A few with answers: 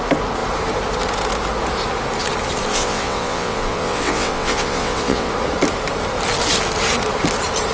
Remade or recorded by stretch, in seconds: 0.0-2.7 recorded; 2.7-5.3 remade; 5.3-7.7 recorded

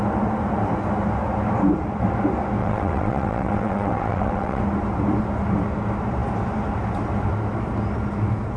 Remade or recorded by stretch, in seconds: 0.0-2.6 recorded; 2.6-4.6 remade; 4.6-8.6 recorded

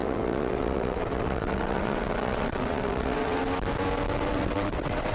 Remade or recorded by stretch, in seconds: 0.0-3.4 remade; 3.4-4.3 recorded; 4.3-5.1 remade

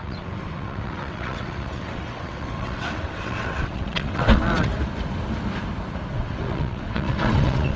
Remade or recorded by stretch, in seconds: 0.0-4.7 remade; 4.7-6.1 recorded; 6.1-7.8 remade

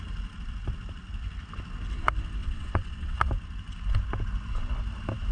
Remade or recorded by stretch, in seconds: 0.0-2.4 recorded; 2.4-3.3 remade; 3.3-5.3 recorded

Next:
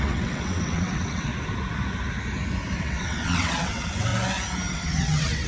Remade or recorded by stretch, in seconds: 0.0-1.3 remade; 1.3-2.8 recorded; 2.8-4.1 remade; 4.1-4.7 recorded; 4.7-5.5 remade

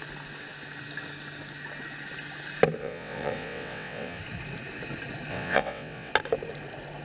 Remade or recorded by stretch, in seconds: 0.0-2.8 recorded; 2.8-4.2 remade; 4.2-5.3 recorded; 5.3-6.1 remade; 6.1-7.0 recorded

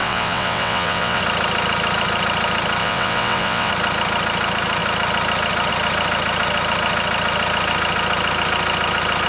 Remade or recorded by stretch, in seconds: 0.0-1.2 remade; 1.2-2.8 recorded; 2.8-3.7 remade; 3.7-9.3 recorded